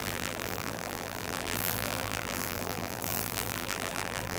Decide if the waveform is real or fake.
fake